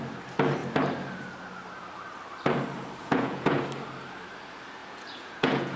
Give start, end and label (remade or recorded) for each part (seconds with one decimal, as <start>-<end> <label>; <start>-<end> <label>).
0.0-3.0 recorded; 3.0-3.6 remade; 3.6-4.8 recorded; 4.8-5.8 remade